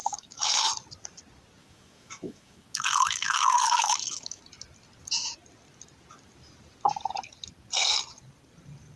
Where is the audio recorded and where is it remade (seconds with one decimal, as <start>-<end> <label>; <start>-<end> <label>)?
0.0-0.7 remade; 0.7-1.6 recorded; 1.6-4.4 remade; 4.4-9.0 recorded